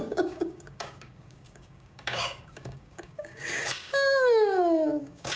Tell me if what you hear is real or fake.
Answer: fake